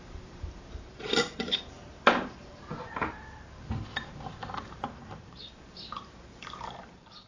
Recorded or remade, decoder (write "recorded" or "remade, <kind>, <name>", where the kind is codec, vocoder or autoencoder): remade, vocoder, BigVGAN v2